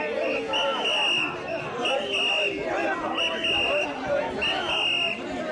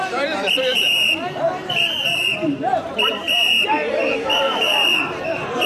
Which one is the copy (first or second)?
second